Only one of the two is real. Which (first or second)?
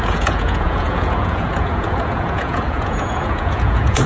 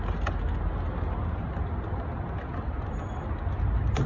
second